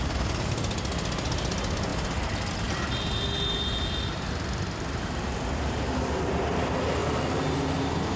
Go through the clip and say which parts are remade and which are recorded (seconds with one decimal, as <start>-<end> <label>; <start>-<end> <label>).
0.0-8.2 recorded